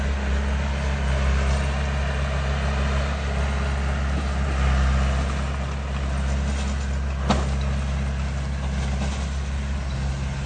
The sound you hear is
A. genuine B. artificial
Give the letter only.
A